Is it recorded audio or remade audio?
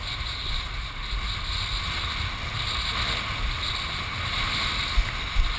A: recorded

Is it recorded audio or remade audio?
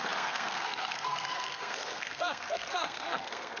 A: remade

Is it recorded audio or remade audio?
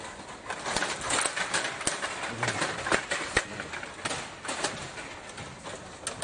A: recorded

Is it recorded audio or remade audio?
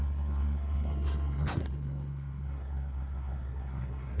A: remade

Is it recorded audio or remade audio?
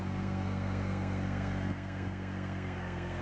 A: remade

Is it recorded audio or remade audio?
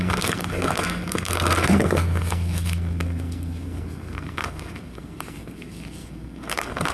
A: remade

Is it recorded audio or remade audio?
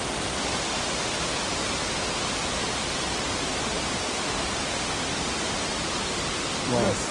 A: recorded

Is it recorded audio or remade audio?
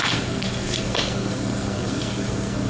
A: remade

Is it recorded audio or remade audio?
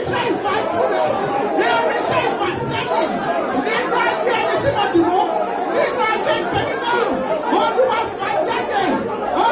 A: recorded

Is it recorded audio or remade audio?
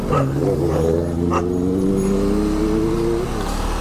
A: recorded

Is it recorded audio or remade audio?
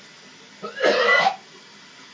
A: recorded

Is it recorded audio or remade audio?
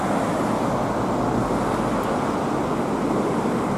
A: recorded